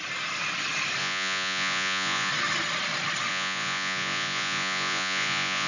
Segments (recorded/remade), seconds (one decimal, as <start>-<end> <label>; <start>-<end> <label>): 0.0-1.0 recorded; 1.0-2.3 remade; 2.3-3.3 recorded; 3.3-5.7 remade

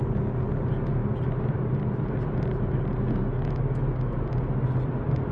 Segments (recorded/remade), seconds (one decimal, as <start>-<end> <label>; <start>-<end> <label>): 0.0-5.3 recorded

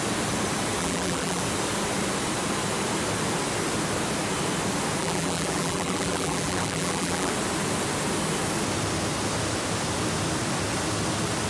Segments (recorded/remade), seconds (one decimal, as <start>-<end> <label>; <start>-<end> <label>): 0.0-0.8 recorded; 0.8-1.4 remade; 1.4-5.0 recorded; 5.0-7.3 remade; 7.3-11.5 recorded

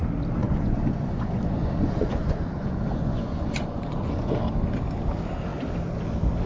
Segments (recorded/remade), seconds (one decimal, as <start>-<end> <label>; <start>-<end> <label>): 0.0-0.4 recorded; 0.4-4.3 remade; 4.3-6.5 recorded